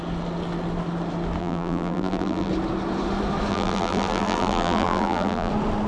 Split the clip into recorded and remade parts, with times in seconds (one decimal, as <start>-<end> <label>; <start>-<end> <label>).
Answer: 0.0-1.4 recorded; 1.4-2.5 remade; 2.5-3.5 recorded; 3.5-5.5 remade; 5.5-5.9 recorded